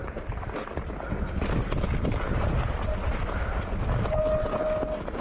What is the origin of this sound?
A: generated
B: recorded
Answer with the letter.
B